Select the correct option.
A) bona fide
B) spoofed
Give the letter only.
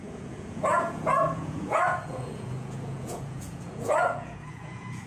B